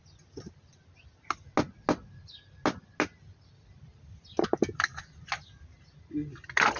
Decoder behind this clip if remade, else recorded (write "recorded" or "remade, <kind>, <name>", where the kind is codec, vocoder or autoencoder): recorded